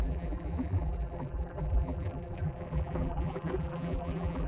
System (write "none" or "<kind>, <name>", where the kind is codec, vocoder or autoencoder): vocoder, BigVGAN v2